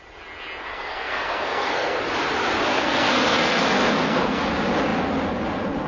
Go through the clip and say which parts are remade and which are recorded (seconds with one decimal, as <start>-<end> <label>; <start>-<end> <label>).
0.0-0.7 recorded; 0.7-2.0 remade; 2.0-2.7 recorded; 2.7-4.4 remade; 4.4-5.9 recorded